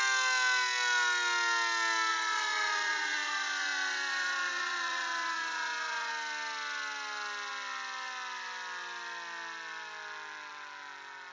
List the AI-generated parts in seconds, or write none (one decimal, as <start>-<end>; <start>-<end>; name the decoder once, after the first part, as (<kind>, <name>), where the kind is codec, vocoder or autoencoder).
2.1-6.1 (vocoder, Vocos)